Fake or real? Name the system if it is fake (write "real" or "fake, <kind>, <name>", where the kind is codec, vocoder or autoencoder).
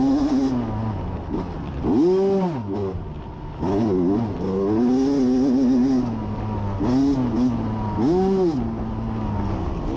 real